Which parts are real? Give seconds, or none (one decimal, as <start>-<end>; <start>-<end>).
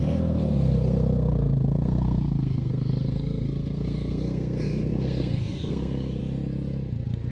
6.2-7.3